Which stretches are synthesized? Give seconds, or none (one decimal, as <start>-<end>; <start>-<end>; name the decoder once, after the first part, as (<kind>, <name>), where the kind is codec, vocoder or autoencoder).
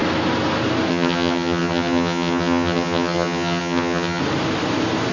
0.9-4.2 (vocoder, HiFi-GAN)